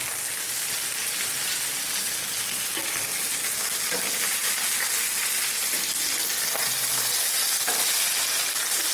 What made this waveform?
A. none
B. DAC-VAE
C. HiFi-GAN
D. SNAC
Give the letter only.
A